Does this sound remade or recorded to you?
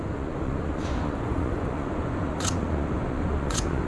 remade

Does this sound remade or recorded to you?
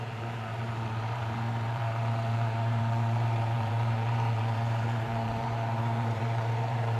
remade